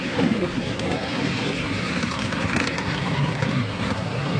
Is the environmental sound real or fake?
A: fake